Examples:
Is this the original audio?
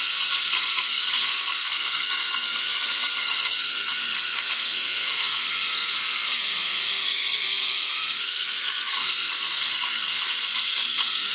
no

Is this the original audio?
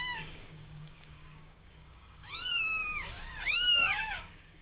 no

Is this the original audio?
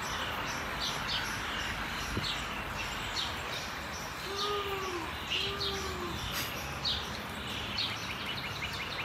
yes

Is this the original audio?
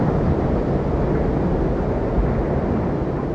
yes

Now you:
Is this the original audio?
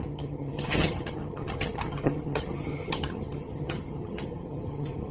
no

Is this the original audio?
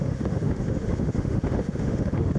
no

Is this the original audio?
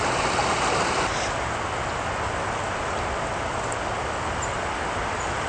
yes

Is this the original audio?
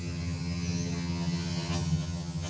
no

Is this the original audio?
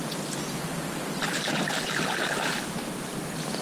yes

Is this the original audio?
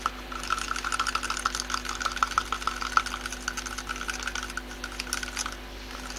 yes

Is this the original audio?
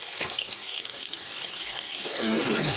no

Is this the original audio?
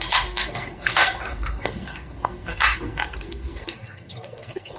no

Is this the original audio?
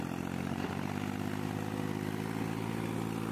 yes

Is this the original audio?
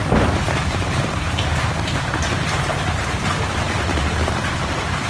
no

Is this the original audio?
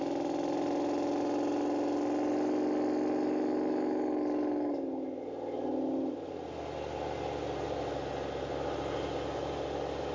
yes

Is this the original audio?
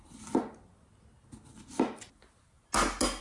yes